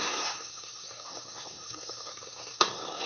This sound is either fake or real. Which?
fake